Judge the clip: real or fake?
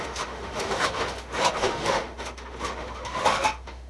fake